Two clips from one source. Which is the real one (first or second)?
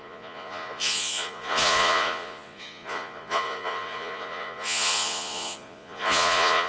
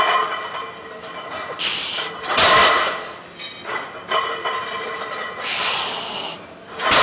second